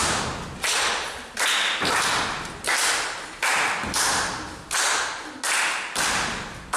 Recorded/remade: recorded